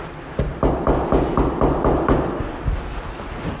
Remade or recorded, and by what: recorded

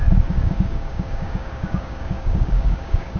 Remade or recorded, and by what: remade, codec, DAC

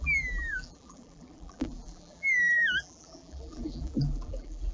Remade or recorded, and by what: remade, vocoder, BigVGAN v2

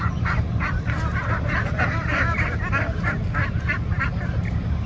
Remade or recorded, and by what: remade, vocoder, BigVGAN v2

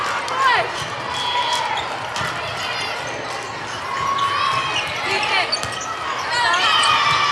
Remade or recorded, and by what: recorded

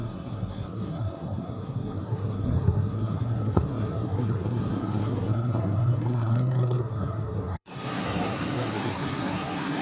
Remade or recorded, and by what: remade, codec, SNAC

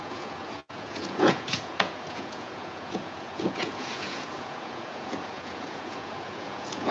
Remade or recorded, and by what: remade, vocoder, Vocos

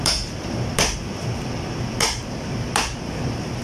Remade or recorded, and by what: remade, vocoder, BigVGAN v2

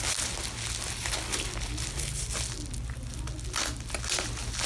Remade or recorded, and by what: recorded